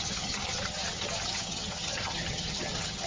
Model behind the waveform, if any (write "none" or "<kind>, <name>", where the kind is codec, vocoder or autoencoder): vocoder, HiFi-GAN